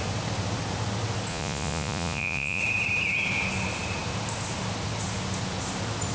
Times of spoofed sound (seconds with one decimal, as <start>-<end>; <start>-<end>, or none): 1.3-2.6